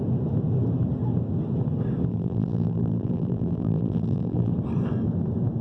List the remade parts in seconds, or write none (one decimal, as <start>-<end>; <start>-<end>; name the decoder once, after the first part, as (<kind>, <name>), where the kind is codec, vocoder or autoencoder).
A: 2.1-4.5 (vocoder, BigVGAN v2)